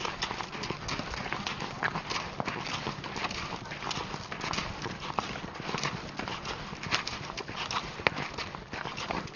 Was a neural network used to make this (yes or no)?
no